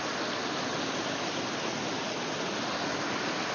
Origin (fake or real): real